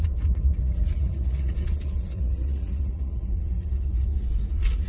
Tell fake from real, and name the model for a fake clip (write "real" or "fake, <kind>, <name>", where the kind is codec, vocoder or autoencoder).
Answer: fake, vocoder, Vocos